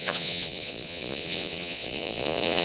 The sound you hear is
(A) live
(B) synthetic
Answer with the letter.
B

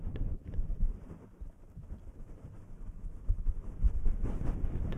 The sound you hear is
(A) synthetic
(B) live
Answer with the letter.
B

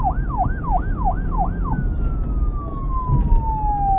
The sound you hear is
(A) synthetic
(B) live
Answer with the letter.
B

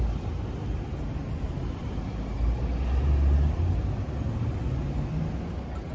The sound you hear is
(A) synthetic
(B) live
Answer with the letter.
B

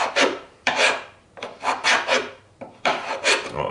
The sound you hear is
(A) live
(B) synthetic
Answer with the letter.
B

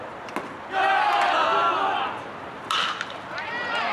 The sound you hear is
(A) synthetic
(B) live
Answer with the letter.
B